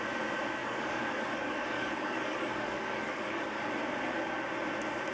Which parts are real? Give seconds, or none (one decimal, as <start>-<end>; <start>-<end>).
0.0-0.6; 3.7-5.1